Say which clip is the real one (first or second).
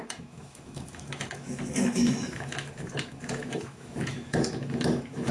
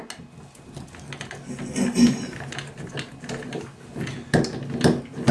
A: second